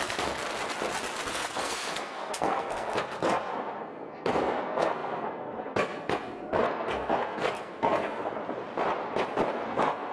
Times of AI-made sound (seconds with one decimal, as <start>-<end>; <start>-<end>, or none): 0.0-0.4; 1.3-8.4; 9.5-10.1